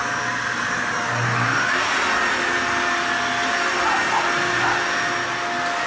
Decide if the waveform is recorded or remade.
recorded